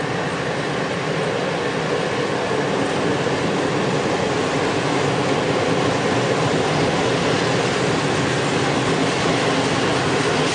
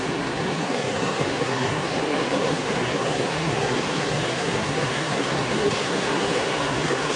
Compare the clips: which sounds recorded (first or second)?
first